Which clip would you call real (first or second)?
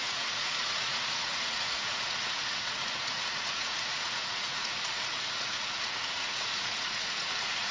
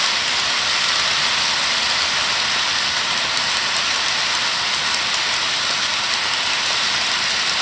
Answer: second